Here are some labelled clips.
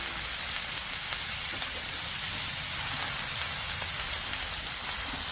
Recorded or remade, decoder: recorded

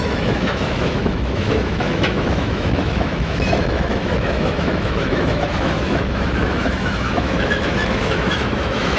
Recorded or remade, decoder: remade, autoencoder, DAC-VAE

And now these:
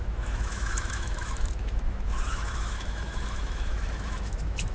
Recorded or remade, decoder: remade, autoencoder, DAC-VAE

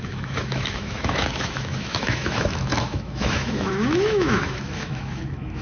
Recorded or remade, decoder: remade, autoencoder, DAC-VAE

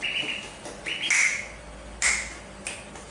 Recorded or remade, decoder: recorded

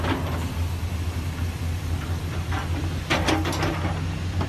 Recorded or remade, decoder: recorded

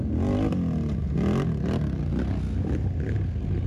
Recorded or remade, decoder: recorded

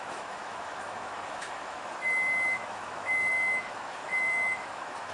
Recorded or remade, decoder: remade, autoencoder, DAC-VAE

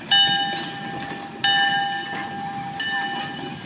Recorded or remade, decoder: recorded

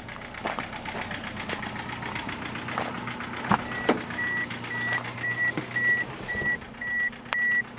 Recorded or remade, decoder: recorded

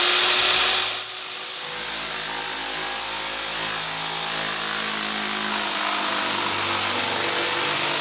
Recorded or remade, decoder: recorded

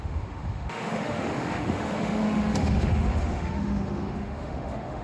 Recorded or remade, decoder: remade, autoencoder, DAC-VAE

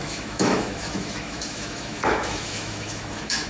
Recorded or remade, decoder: remade, autoencoder, DAC-VAE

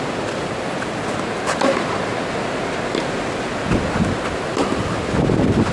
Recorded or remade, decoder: recorded